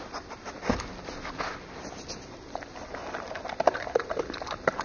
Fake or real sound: real